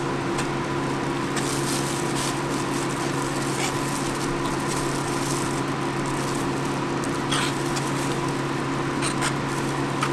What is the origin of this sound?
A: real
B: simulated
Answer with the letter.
A